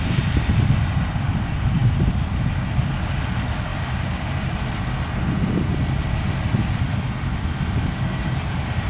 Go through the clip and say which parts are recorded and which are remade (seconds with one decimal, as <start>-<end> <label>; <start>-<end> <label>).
0.0-8.9 recorded